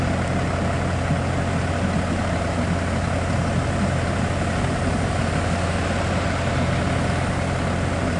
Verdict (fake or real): real